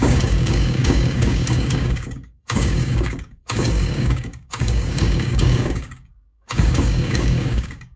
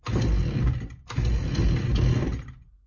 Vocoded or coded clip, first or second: first